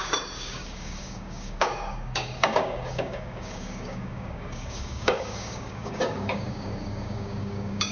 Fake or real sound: fake